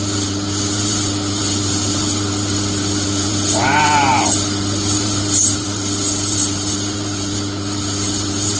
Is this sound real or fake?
fake